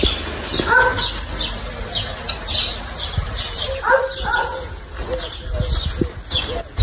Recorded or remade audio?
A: recorded